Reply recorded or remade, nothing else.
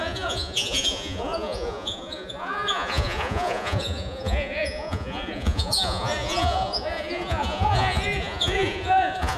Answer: remade